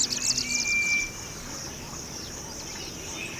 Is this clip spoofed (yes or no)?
no